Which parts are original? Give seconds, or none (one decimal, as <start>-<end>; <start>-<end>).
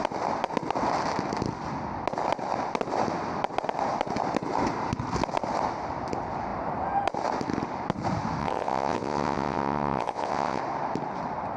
0.0-8.4; 10.6-11.6